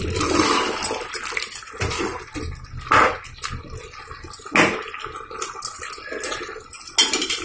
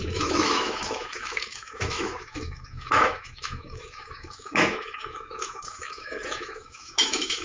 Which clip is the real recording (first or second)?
first